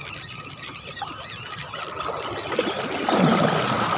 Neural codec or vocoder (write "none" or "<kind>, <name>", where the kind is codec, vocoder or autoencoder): none